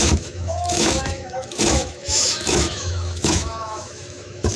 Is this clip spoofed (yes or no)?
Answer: yes